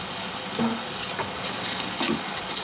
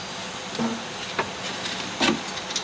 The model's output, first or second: first